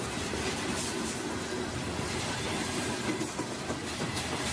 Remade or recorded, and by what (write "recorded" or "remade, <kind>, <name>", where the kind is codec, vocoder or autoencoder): recorded